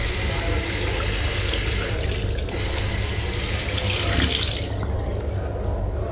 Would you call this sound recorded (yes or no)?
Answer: yes